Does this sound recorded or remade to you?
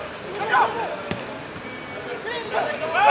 recorded